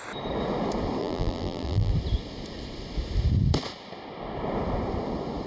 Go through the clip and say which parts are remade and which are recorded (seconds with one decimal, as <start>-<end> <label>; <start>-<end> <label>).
0.0-1.0 recorded; 1.0-1.9 remade; 1.9-5.5 recorded